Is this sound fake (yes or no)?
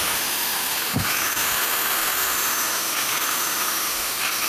yes